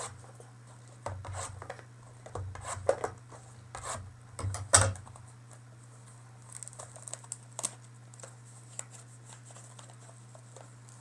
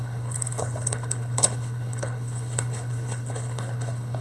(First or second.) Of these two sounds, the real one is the first